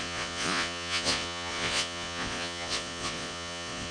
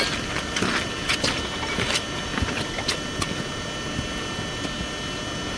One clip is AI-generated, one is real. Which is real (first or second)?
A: second